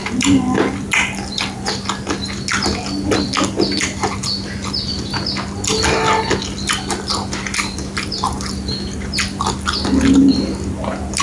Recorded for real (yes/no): yes